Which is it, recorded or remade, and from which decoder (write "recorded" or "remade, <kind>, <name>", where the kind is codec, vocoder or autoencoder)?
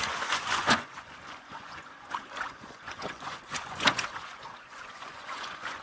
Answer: remade, vocoder, Vocos